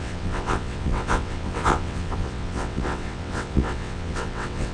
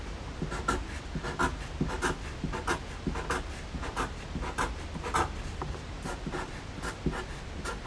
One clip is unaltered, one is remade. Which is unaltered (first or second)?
second